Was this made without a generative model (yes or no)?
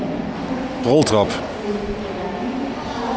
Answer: yes